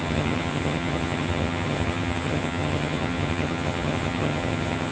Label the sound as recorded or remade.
remade